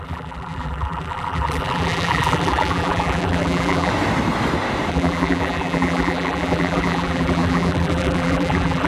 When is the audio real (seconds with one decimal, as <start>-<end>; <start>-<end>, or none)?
3.9-4.9